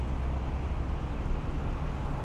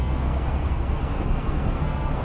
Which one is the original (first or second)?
first